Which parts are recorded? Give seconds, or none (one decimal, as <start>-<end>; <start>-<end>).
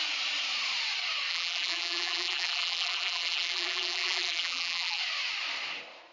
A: 0.0-1.3; 5.0-6.1